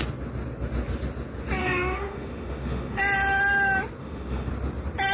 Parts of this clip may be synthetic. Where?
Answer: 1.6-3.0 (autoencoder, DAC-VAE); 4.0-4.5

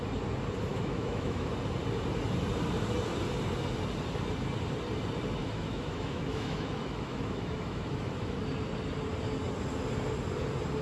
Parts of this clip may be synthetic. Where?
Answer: 0.7-1.5 (autoencoder, DAC-VAE); 5.4-8.4